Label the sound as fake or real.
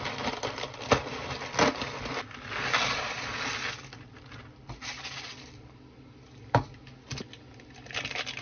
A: real